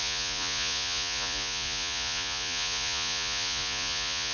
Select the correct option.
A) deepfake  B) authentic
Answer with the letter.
A